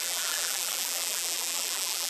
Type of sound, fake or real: fake